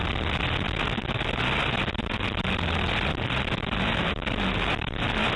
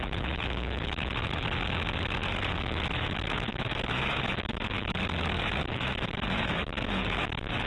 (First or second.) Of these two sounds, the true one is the first